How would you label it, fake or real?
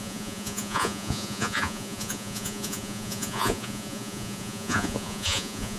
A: fake